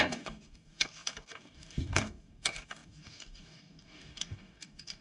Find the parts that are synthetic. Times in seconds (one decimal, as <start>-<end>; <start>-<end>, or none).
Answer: 0.0-5.0